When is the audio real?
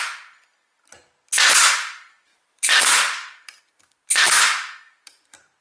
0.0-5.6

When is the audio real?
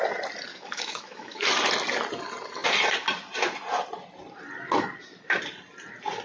0.0-0.5; 1.5-6.2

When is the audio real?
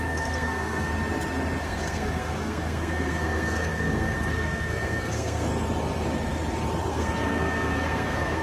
0.9-1.6; 5.5-6.9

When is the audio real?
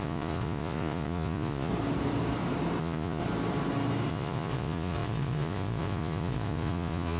1.7-2.8; 3.2-4.1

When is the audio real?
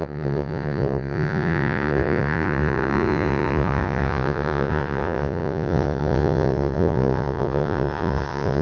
none